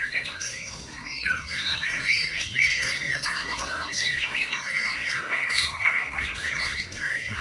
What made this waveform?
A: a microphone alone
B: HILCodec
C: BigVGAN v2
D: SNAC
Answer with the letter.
D